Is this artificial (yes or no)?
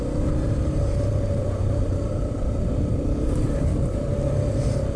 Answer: no